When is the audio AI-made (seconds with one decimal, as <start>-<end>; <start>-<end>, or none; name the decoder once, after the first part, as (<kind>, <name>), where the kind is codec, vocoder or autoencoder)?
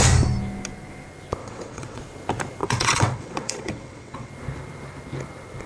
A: 1.4-2.0 (vocoder, WaveNeXt); 2.6-4.3